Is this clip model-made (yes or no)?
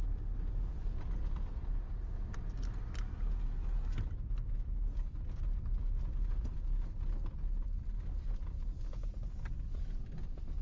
no